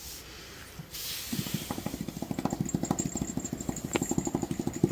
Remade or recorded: recorded